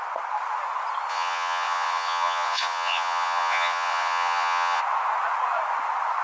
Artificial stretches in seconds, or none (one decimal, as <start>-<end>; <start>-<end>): 1.1-4.8